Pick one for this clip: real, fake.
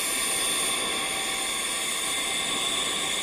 real